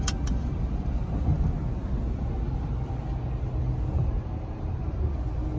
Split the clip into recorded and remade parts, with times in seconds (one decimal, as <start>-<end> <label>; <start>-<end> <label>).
0.0-5.6 recorded